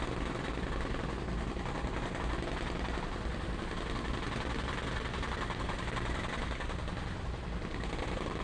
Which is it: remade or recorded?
recorded